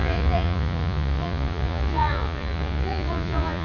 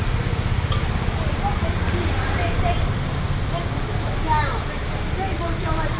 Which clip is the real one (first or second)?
second